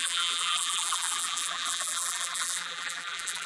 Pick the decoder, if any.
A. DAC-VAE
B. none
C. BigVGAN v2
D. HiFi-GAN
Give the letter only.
C